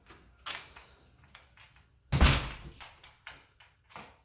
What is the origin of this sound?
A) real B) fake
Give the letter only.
A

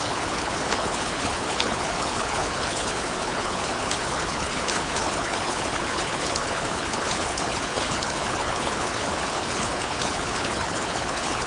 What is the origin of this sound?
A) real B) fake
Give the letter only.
B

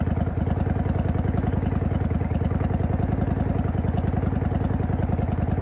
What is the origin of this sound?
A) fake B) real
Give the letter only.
B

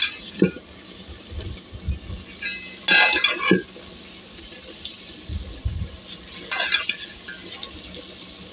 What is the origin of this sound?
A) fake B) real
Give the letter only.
B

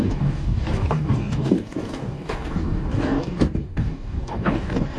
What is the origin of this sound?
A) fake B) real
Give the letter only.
A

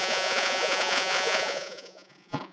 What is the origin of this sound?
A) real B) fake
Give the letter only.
B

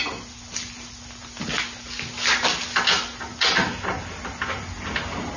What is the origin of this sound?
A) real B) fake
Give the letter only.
A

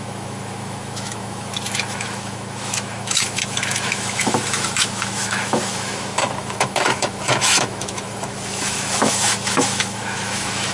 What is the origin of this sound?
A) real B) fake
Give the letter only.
B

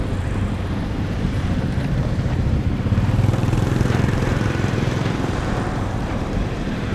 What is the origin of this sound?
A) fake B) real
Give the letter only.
A